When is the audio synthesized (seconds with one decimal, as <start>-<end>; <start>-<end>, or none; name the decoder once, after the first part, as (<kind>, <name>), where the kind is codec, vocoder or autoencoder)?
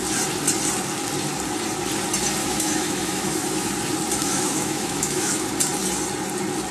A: 2.4-3.7 (autoencoder, DAC-VAE); 4.2-5.5